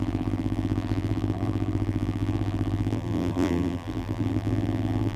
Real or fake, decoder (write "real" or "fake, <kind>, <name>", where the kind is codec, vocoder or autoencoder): fake, vocoder, BigVGAN v2